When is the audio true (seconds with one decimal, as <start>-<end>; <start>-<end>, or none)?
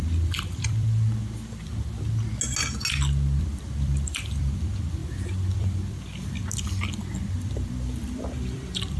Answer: 1.7-3.4; 5.0-5.5; 6.4-7.2